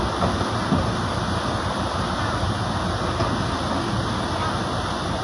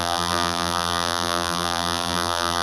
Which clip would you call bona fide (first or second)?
first